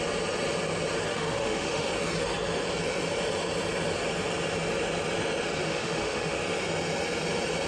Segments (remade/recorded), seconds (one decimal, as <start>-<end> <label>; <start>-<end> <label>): 0.0-1.1 recorded; 1.1-1.9 remade; 1.9-5.6 recorded; 5.6-6.4 remade; 6.4-7.7 recorded

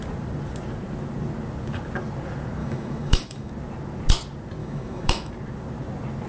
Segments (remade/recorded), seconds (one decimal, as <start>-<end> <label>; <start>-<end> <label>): 0.0-2.6 recorded; 2.6-3.5 remade; 3.5-4.6 recorded; 4.6-5.3 remade; 5.3-6.3 recorded

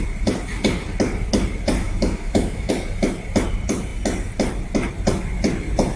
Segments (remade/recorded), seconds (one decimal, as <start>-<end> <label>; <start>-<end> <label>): 0.0-1.8 recorded; 1.8-2.7 remade; 2.7-6.0 recorded

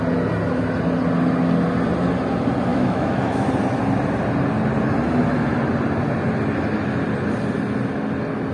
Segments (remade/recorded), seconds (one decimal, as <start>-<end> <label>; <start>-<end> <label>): 0.0-2.7 recorded; 2.7-3.5 remade; 3.5-8.5 recorded